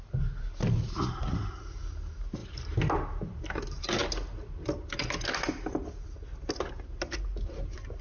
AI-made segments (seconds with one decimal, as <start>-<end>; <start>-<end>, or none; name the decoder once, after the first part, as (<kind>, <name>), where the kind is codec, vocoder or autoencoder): none